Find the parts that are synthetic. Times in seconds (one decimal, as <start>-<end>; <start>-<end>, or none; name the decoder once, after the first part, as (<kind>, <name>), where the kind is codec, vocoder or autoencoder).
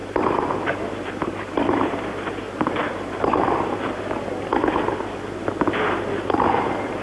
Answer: 0.0-4.0 (vocoder, BigVGAN v2)